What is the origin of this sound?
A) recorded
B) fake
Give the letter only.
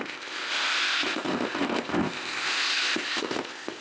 B